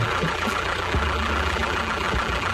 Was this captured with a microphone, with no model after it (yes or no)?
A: no